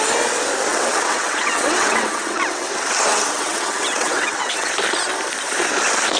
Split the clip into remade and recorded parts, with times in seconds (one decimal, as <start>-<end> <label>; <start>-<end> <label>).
0.0-0.7 recorded; 0.7-2.7 remade; 2.7-3.1 recorded; 3.1-4.7 remade; 4.7-6.2 recorded